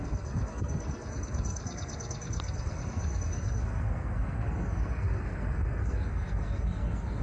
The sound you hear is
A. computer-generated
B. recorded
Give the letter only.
A